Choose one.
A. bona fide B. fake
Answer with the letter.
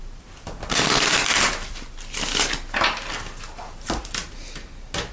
A